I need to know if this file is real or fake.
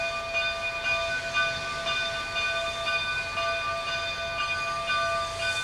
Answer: real